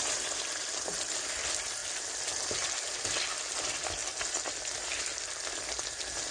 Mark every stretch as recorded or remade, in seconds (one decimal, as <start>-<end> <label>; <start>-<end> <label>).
0.0-6.3 recorded